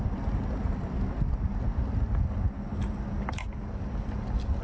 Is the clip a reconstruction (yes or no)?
no